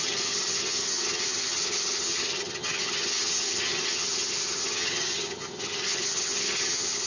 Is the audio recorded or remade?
remade